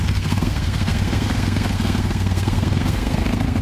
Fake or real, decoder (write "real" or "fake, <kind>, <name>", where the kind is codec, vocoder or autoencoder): fake, codec, SNAC